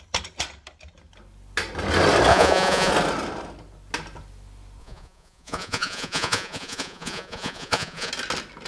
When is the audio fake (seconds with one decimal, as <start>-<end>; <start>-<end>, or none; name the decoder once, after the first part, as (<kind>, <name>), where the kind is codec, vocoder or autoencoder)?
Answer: 2.3-2.9 (vocoder, Vocos); 4.8-8.1